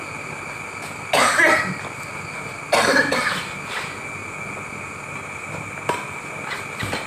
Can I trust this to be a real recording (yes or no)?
yes